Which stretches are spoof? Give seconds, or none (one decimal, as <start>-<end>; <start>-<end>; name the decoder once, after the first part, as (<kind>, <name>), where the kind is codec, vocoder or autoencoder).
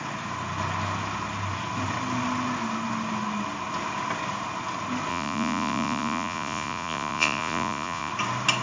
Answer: 5.1-8.1 (vocoder, Vocos)